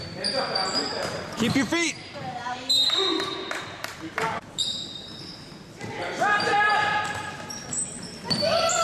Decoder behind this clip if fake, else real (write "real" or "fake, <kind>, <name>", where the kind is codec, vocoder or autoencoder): fake, vocoder, BigVGAN v2